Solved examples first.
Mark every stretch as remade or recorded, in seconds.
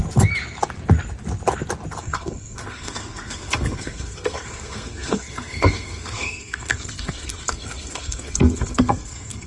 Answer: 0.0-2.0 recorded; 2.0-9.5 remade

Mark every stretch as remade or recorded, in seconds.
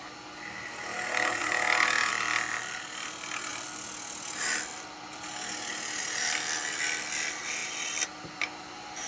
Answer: 0.0-9.1 recorded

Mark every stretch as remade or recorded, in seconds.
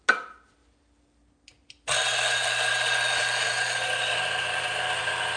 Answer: 0.0-5.4 recorded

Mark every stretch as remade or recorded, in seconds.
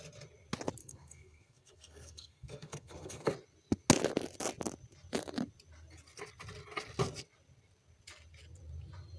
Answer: 0.0-0.8 recorded; 0.8-3.3 remade; 3.3-9.2 recorded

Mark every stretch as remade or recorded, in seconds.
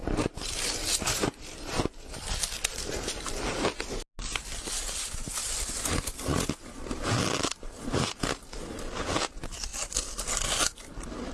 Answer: 0.0-11.3 recorded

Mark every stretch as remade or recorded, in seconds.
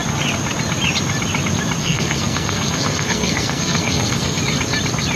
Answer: 0.0-1.8 recorded; 1.8-4.4 remade; 4.4-5.2 recorded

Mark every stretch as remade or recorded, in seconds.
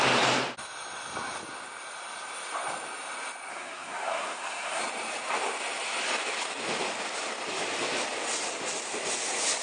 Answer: 0.0-3.5 recorded; 3.5-4.8 remade; 4.8-9.6 recorded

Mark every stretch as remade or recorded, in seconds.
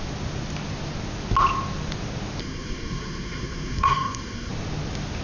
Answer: 0.0-2.4 recorded; 2.4-4.5 remade; 4.5-5.2 recorded